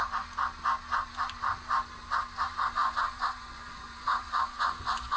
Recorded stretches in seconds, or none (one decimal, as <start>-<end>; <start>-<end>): 0.0-2.8